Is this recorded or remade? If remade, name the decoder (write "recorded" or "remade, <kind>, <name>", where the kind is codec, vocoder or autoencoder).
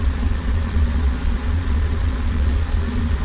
remade, vocoder, Vocos